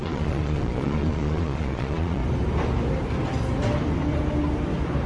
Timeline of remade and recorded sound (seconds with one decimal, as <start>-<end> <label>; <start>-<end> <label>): 0.0-2.2 remade; 2.2-5.1 recorded